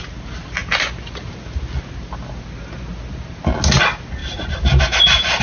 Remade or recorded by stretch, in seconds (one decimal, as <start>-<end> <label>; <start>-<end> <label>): 0.0-4.2 recorded; 4.2-5.4 remade